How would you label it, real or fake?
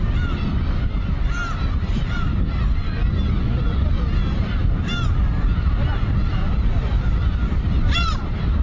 fake